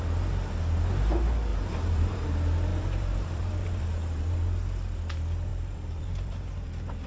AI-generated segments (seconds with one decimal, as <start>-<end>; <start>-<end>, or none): 1.5-2.3; 2.7-4.6; 5.5-7.1